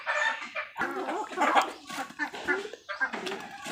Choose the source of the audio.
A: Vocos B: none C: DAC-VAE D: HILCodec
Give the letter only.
B